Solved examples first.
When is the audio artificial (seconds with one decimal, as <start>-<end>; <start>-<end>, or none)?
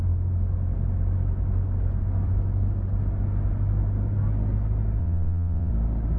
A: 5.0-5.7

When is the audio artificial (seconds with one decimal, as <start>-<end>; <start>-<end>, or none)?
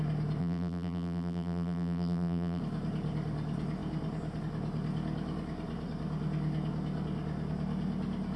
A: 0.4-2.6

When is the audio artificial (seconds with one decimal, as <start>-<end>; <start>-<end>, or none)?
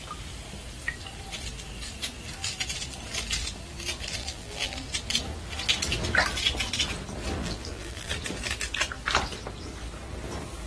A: 4.2-4.8; 7.4-8.1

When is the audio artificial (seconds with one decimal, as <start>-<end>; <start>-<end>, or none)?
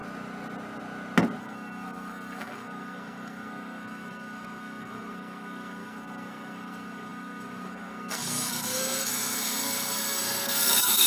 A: 1.4-11.1